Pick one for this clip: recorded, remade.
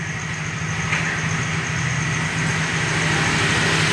recorded